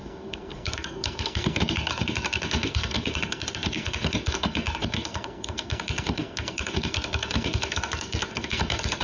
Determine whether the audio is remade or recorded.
remade